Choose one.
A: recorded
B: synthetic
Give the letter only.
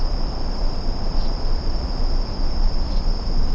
B